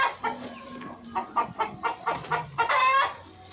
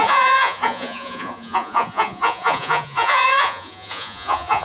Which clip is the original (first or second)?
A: first